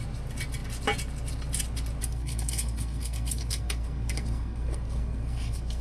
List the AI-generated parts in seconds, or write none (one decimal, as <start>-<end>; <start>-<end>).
2.0-5.8

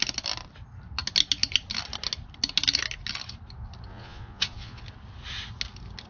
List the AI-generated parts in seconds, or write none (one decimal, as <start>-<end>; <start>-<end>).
3.9-4.8